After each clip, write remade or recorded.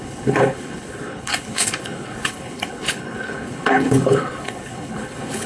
remade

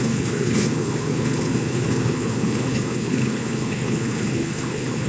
remade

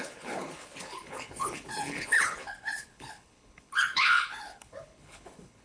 remade